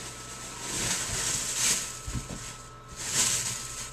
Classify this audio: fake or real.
real